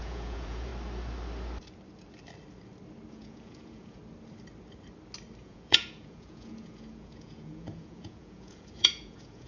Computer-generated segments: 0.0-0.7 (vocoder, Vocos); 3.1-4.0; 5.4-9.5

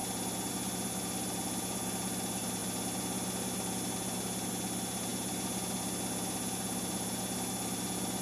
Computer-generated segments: none